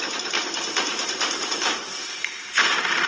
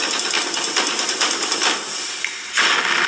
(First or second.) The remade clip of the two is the first